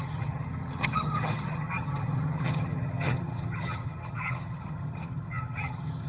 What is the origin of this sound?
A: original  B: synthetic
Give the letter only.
B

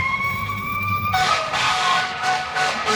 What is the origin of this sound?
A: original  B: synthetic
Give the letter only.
B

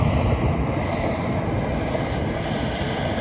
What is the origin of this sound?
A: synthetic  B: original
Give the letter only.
B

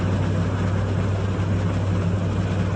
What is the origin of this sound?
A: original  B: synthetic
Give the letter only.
A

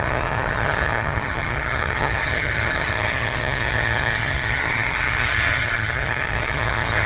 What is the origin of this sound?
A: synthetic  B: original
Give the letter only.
A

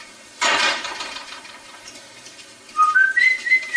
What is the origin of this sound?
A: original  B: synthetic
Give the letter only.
B